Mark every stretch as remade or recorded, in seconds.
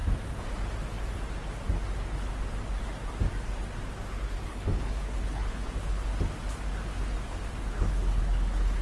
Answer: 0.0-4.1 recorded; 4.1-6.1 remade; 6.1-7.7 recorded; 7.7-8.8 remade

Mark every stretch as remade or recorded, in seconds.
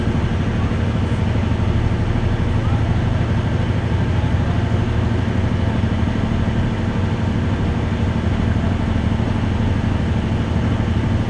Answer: 0.0-11.3 recorded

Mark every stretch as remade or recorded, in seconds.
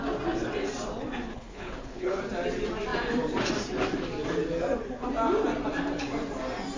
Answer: 0.0-1.3 recorded; 1.3-2.2 remade; 2.2-6.8 recorded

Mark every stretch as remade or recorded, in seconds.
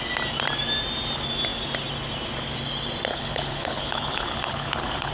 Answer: 0.0-3.1 recorded; 3.1-5.1 remade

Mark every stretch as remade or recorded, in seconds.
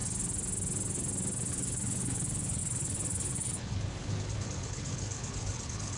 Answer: 0.0-1.5 recorded; 1.5-6.0 remade